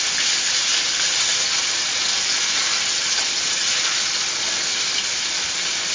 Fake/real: real